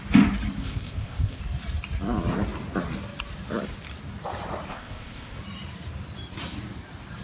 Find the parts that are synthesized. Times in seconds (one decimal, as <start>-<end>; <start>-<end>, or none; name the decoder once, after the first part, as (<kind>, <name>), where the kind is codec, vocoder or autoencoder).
0.6-1.4 (codec, ZipCodec); 4.7-5.4